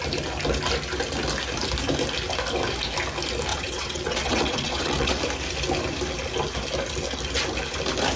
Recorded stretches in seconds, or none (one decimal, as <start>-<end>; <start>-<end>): 0.0-3.5; 5.2-8.2